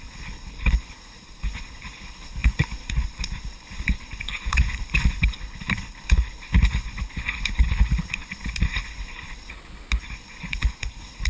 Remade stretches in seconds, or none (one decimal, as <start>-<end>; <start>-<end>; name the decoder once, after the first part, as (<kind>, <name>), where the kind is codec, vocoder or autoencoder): 0.0-9.5 (codec, HILCodec); 10.0-11.3